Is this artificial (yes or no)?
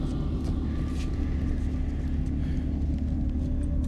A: no